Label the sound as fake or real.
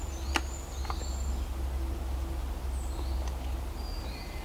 real